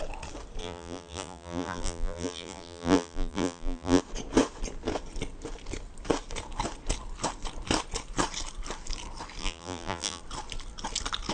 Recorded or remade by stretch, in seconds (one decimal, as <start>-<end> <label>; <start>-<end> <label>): 0.0-0.6 recorded; 0.6-4.0 remade; 4.0-9.4 recorded; 9.4-10.2 remade; 10.2-11.3 recorded

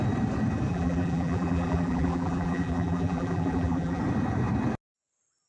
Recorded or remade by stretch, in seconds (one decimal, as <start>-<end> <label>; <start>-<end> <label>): 0.0-0.7 recorded; 0.7-4.0 remade; 4.0-5.5 recorded

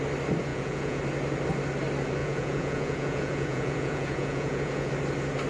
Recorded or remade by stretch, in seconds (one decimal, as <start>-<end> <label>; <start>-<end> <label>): 0.0-0.5 recorded; 0.5-1.0 remade; 1.0-2.2 recorded; 2.2-4.9 remade; 4.9-5.5 recorded